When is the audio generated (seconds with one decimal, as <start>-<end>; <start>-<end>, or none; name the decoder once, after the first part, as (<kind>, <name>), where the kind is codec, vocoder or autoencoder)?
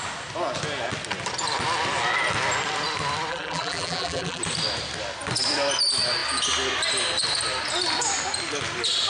3.3-4.4 (vocoder, BigVGAN v2)